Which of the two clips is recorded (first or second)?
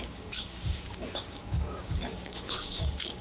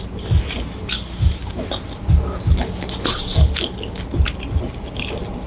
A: second